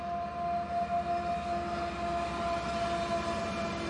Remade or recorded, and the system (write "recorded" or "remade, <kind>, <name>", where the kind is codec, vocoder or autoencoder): recorded